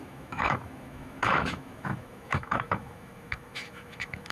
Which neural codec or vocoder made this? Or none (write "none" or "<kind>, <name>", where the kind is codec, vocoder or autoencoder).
autoencoder, DAC-VAE